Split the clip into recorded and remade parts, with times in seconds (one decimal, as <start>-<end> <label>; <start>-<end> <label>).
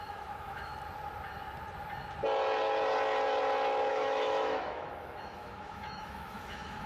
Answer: 0.0-0.7 remade; 0.7-3.9 recorded; 3.9-6.9 remade